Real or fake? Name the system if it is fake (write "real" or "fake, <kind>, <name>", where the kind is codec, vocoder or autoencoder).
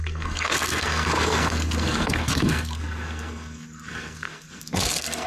fake, codec, SNAC